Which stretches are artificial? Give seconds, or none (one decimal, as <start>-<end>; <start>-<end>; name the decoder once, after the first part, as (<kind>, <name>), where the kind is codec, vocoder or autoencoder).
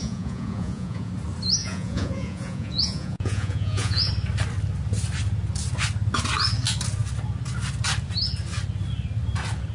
0.0-1.1 (vocoder, Vocos); 1.6-4.1